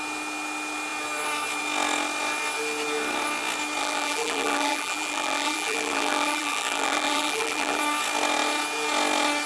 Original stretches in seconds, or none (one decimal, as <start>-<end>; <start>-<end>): 0.0-3.8; 7.8-9.5